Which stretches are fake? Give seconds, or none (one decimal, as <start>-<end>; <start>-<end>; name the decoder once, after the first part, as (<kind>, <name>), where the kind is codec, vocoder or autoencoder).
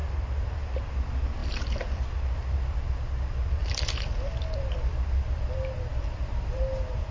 none